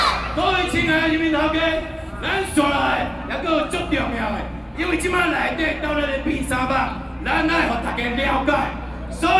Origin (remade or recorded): recorded